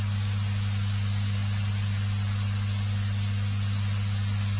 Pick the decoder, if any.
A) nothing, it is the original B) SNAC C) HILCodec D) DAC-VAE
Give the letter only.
A